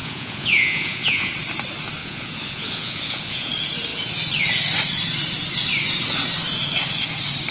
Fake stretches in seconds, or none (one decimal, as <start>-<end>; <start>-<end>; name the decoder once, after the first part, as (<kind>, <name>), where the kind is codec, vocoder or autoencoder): 0.0-1.3 (vocoder, Vocos); 2.0-3.5

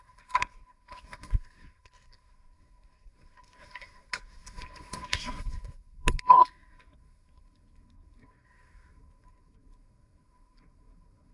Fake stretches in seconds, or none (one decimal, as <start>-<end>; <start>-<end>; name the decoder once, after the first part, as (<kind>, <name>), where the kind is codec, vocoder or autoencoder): 0.0-11.3 (codec, SNAC)

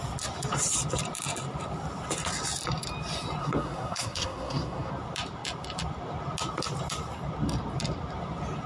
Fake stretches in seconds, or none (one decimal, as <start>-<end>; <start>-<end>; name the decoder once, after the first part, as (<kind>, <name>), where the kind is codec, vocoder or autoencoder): 3.4-4.9 (codec, SNAC)